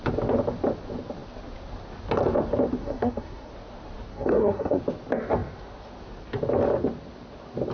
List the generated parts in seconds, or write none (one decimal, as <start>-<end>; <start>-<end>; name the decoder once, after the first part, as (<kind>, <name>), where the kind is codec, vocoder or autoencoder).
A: 2.8-3.5 (codec, SNAC); 4.1-4.8